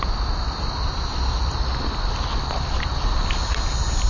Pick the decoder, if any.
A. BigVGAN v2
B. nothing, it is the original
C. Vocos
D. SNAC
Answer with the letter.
B